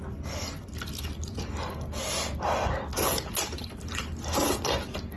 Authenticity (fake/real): real